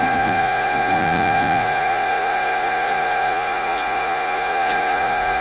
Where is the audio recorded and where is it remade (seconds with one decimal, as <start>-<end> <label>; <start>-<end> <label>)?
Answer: 0.0-5.4 remade